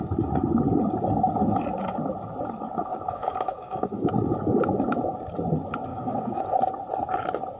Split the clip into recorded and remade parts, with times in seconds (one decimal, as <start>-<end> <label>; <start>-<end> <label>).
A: 0.0-2.9 recorded; 2.9-4.1 remade; 4.1-5.9 recorded; 5.9-6.6 remade; 6.6-7.6 recorded

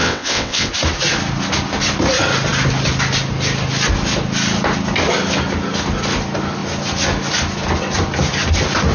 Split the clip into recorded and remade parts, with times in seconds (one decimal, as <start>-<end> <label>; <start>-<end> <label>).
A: 0.0-0.7 remade; 0.7-8.9 recorded

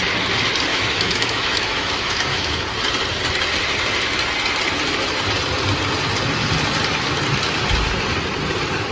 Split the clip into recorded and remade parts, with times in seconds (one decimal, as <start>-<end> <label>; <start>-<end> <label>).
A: 0.0-0.7 recorded; 0.7-2.6 remade; 2.6-8.9 recorded

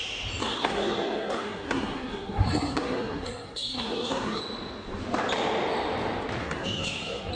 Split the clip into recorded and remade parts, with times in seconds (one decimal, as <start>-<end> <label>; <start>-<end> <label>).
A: 0.0-0.4 recorded; 0.4-4.4 remade; 4.4-6.4 recorded; 6.4-7.3 remade

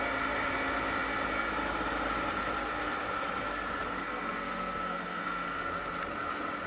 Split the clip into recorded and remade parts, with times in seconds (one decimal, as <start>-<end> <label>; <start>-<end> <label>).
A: 0.0-4.0 recorded; 4.0-5.7 remade; 5.7-6.7 recorded